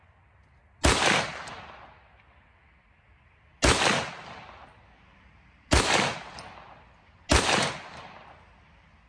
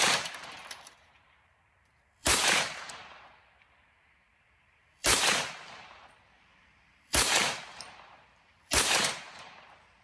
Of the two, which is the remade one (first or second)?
second